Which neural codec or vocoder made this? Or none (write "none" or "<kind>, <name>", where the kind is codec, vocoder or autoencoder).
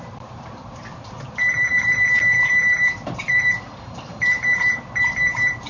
vocoder, BigVGAN v2